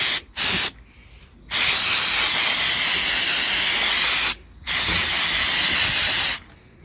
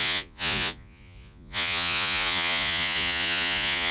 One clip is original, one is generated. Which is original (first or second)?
first